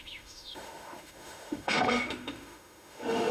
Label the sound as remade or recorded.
remade